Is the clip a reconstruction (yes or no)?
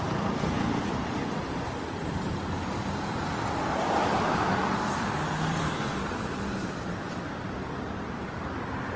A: yes